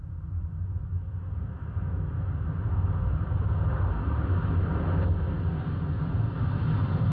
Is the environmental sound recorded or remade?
recorded